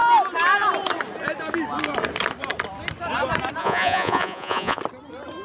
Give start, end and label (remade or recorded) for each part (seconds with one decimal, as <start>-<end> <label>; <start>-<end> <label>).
0.0-3.6 recorded; 3.6-4.8 remade; 4.8-5.4 recorded